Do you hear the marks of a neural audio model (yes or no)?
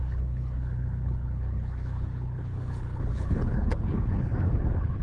yes